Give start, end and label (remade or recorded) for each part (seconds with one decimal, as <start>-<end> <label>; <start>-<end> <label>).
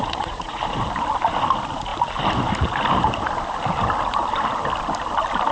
0.0-0.6 remade; 0.6-5.5 recorded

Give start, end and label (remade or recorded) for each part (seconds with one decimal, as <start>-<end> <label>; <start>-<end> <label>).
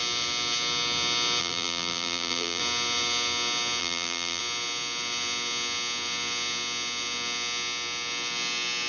0.0-1.4 recorded; 1.4-2.6 remade; 2.6-3.8 recorded; 3.8-4.4 remade; 4.4-8.9 recorded